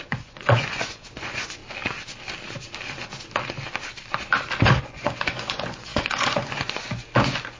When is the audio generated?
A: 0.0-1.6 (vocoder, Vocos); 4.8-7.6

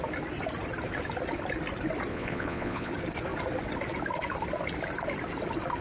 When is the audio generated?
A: 2.1-2.9 (vocoder, Vocos)